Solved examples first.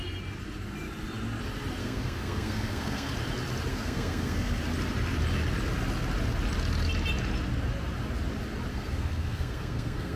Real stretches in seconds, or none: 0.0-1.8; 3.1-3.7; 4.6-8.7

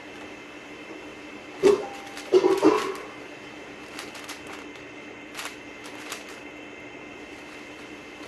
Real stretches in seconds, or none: 0.0-8.3

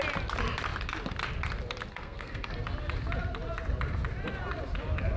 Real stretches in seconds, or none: 0.0-1.9; 2.5-5.2